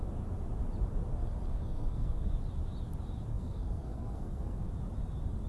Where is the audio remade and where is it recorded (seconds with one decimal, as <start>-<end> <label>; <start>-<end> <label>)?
0.0-1.5 recorded; 1.5-2.3 remade; 2.3-3.3 recorded; 3.3-4.7 remade; 4.7-5.5 recorded